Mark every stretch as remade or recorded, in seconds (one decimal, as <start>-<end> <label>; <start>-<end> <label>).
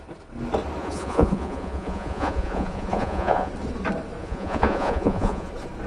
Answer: 0.0-0.8 recorded; 0.8-3.5 remade; 3.5-4.2 recorded; 4.2-5.5 remade; 5.5-5.9 recorded